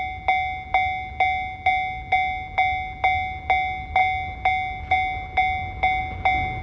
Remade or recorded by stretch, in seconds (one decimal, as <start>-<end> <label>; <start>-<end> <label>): 0.0-6.6 recorded